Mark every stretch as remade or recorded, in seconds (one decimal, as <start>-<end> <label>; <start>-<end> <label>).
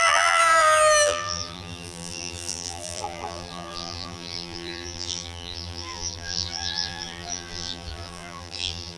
0.0-9.0 remade